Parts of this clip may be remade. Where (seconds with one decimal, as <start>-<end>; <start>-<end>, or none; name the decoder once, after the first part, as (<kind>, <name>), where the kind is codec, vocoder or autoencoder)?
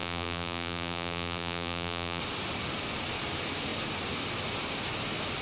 0.0-2.2 (vocoder, BigVGAN v2)